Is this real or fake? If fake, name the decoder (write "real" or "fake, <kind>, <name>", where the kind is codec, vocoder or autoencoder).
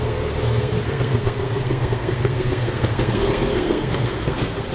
fake, codec, SNAC